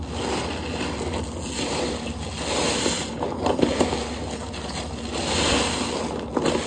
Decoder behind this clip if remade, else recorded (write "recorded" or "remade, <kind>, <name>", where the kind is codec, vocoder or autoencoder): recorded